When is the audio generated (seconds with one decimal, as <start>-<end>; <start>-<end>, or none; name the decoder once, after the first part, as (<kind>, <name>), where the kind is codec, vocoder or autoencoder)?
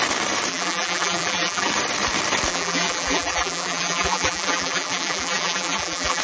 0.5-1.7 (vocoder, BigVGAN v2); 2.5-6.2